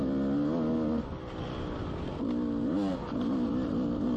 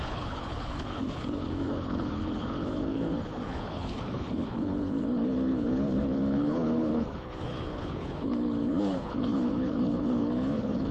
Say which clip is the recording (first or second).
first